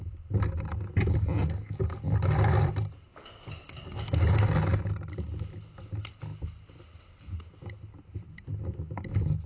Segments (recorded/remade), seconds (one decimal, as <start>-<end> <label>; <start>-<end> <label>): 0.0-9.5 recorded